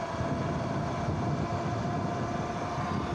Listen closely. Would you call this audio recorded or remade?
recorded